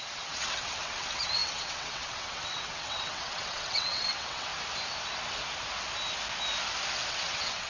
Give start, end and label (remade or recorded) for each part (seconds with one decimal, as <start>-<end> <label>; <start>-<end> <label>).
0.0-4.5 remade; 4.5-7.1 recorded; 7.1-7.7 remade